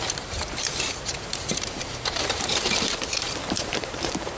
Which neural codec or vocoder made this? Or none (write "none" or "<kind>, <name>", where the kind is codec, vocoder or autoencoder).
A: vocoder, BigVGAN v2